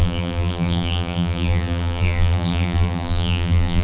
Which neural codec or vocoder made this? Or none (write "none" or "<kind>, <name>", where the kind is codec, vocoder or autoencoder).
vocoder, BigVGAN v2